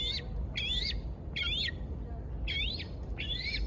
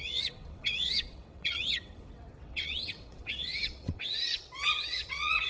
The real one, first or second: first